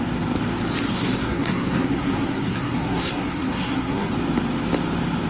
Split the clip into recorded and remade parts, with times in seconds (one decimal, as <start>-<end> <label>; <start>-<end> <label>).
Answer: 0.0-0.9 recorded; 0.9-4.1 remade; 4.1-5.3 recorded